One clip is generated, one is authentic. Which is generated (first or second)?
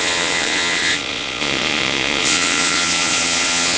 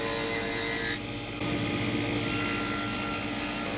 first